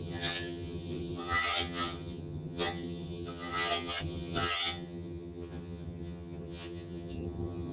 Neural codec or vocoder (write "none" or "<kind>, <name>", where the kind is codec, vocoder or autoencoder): vocoder, HiFi-GAN